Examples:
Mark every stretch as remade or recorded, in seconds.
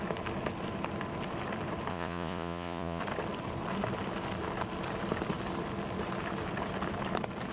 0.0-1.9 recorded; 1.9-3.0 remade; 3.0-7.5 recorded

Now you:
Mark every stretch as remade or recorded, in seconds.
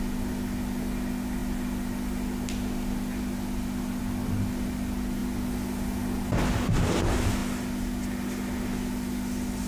0.0-9.7 recorded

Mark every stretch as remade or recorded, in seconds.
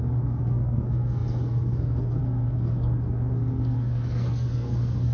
0.0-5.1 remade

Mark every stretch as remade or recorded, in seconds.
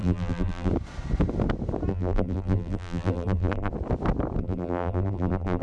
0.0-0.7 remade; 0.7-1.9 recorded; 1.9-3.7 remade; 3.7-4.4 recorded; 4.4-5.6 remade